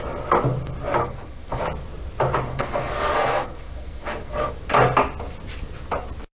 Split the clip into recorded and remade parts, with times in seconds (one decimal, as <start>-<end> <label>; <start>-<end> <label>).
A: 0.0-1.0 recorded; 1.0-1.6 remade; 1.6-2.5 recorded; 2.5-4.5 remade; 4.5-6.4 recorded